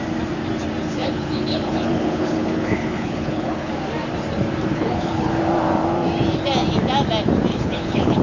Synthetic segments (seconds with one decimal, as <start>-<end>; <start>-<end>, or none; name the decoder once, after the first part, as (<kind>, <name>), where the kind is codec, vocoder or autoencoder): 0.9-3.7 (codec, HILCodec); 4.7-5.4; 7.5-8.2